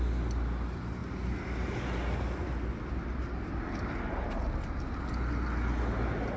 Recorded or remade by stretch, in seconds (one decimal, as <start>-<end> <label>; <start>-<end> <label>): 0.0-6.4 recorded